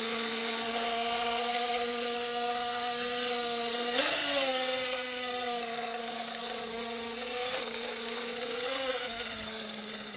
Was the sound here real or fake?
fake